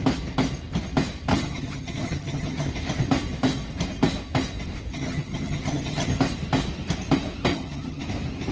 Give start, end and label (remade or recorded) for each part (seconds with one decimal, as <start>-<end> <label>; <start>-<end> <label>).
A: 0.0-1.3 recorded; 1.3-2.7 remade; 2.7-4.9 recorded; 4.9-6.2 remade; 6.2-7.5 recorded; 7.5-8.0 remade; 8.0-8.5 recorded